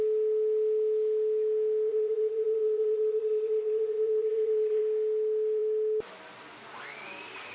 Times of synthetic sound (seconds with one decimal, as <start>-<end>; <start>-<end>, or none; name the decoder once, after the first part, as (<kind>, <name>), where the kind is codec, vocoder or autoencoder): 1.9-4.8 (vocoder, WaveNeXt)